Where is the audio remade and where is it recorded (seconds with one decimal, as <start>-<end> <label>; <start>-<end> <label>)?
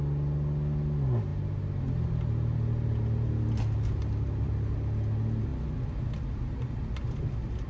0.0-7.7 recorded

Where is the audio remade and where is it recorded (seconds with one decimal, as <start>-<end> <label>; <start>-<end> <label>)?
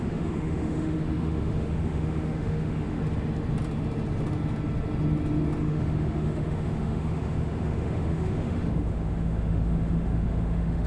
0.0-3.0 remade; 3.0-5.6 recorded; 5.6-10.9 remade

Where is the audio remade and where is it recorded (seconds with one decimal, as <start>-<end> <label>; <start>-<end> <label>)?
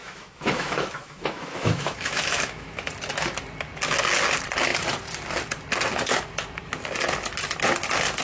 0.0-2.9 remade; 2.9-8.2 recorded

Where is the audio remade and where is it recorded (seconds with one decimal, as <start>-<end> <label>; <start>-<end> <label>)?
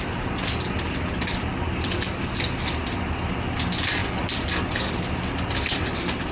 0.0-6.3 recorded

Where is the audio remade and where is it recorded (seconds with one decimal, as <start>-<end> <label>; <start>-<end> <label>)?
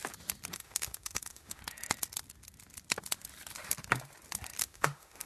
0.0-0.5 recorded; 0.5-1.6 remade; 1.6-4.6 recorded; 4.6-5.3 remade